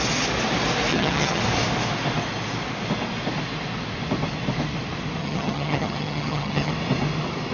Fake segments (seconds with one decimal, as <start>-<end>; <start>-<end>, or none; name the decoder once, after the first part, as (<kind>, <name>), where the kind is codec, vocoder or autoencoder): 0.9-1.4 (vocoder, HiFi-GAN); 5.2-6.7